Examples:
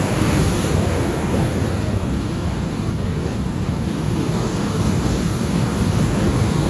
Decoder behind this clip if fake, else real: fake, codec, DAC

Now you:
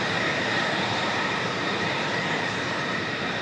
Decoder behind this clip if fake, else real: fake, vocoder, BigVGAN v2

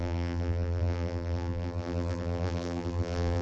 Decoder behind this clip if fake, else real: fake, vocoder, BigVGAN v2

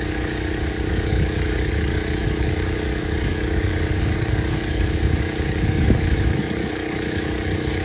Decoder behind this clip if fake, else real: fake, codec, DAC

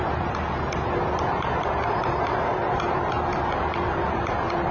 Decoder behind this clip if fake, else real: fake, vocoder, BigVGAN v2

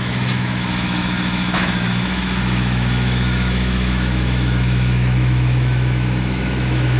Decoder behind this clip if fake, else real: fake, autoencoder, DAC-VAE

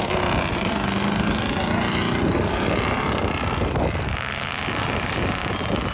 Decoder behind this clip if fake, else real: real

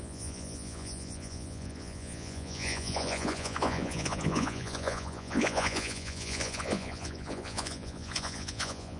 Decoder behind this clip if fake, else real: fake, vocoder, Vocos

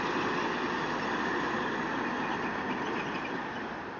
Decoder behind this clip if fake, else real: real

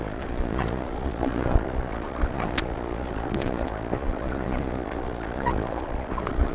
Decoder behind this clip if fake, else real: fake, vocoder, Vocos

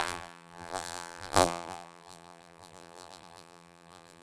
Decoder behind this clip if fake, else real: fake, vocoder, BigVGAN v2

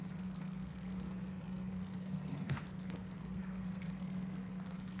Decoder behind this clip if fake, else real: fake, codec, SNAC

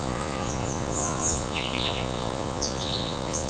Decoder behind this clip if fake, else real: fake, vocoder, Vocos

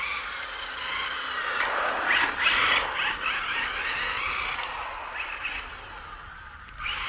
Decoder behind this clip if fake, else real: real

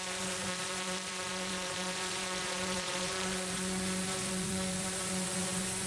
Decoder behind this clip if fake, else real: fake, vocoder, Vocos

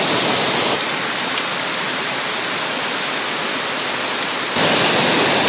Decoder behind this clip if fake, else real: real